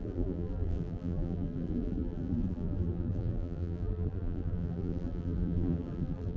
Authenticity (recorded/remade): remade